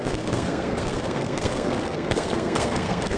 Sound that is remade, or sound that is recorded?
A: remade